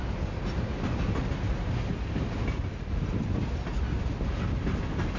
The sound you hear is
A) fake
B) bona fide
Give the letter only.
B